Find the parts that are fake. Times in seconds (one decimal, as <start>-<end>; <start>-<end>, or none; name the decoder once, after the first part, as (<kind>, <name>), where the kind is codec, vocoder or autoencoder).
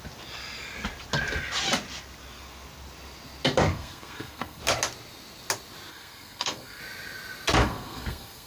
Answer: 3.7-4.6 (codec, SNAC); 5.9-6.8; 7.6-8.5